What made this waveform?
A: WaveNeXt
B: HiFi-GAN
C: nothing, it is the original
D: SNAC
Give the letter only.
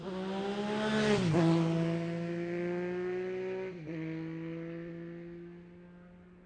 C